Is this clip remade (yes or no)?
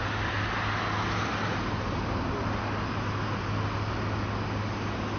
no